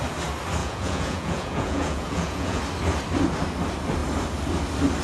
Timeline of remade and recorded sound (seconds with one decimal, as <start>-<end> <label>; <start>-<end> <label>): 0.0-0.6 recorded; 0.6-2.6 remade; 2.6-5.0 recorded